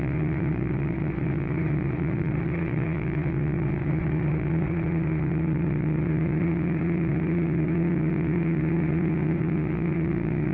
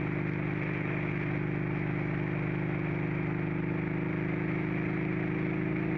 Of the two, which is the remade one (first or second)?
first